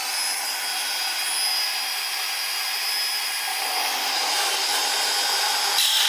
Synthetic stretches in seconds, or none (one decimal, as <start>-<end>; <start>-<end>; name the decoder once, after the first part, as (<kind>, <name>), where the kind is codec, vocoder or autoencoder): 1.5-2.1 (vocoder, BigVGAN v2); 3.5-4.8